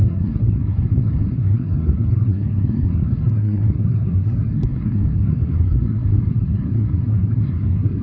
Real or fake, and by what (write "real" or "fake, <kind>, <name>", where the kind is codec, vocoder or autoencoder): fake, codec, SNAC